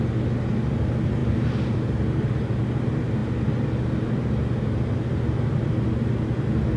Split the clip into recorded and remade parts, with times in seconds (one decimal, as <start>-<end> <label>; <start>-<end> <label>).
0.0-6.8 recorded